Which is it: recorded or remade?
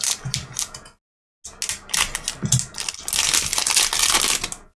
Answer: recorded